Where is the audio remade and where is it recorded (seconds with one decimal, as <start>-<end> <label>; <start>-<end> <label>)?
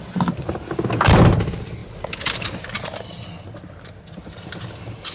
0.0-5.1 recorded